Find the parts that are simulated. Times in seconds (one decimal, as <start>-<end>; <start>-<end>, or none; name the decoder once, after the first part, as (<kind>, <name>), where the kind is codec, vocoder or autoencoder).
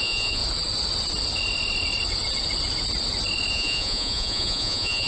0.0-0.4 (vocoder, Vocos); 3.5-5.1